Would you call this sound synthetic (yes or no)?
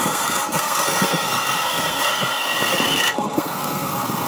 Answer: yes